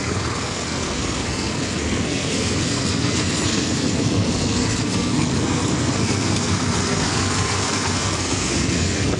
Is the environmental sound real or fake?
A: fake